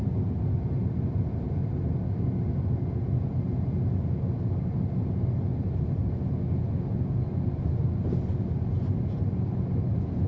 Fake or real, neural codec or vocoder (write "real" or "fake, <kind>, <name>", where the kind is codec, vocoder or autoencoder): real